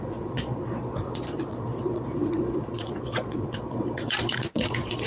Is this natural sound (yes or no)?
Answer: no